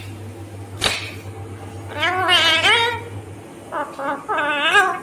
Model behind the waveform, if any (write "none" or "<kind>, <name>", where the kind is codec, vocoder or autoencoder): none